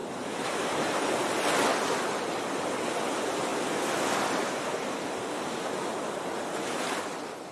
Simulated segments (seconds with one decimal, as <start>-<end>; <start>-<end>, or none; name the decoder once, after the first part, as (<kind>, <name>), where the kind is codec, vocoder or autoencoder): 0.0-1.1 (vocoder, BigVGAN v2)

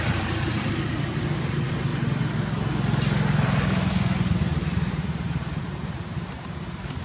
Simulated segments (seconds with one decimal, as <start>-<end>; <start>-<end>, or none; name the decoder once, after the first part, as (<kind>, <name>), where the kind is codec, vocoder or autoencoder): 0.0-0.7 (vocoder, BigVGAN v2); 1.5-1.9; 4.9-7.0

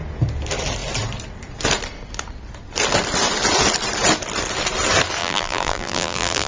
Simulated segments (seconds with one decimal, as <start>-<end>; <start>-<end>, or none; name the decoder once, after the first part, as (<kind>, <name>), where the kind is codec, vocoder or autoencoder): 5.2-6.5 (vocoder, BigVGAN v2)